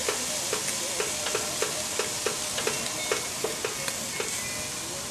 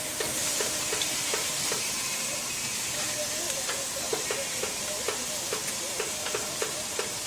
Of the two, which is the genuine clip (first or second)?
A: first